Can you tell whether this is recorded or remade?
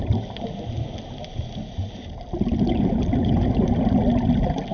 recorded